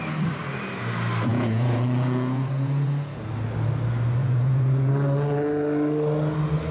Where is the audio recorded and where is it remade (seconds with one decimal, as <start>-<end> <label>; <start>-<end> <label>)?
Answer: 0.0-1.3 recorded; 1.3-3.3 remade; 3.3-4.2 recorded; 4.2-4.9 remade; 4.9-6.7 recorded